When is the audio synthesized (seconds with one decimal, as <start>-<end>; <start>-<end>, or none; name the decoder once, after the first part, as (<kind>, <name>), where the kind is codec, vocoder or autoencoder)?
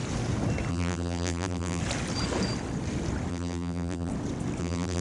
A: 0.7-1.8 (vocoder, BigVGAN v2); 3.3-4.1; 4.6-5.0